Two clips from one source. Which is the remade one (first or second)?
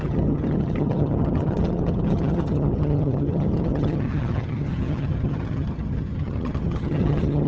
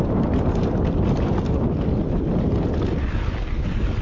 first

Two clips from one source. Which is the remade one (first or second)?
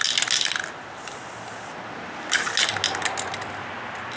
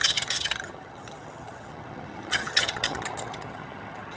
second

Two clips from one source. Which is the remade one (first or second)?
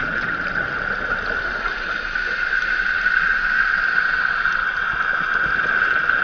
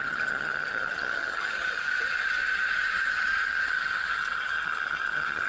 second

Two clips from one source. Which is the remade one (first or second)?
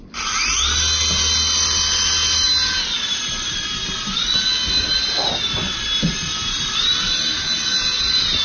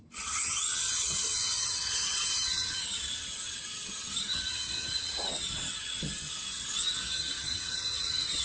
second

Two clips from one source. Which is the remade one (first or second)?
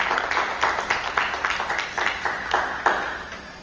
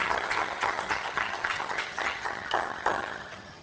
second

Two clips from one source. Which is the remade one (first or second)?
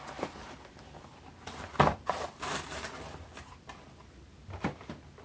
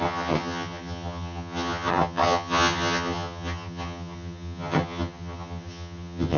second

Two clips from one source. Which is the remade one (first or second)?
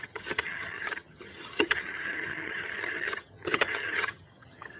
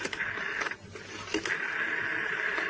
first